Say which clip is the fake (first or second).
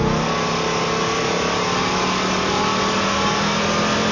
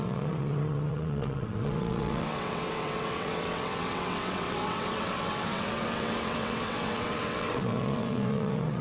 second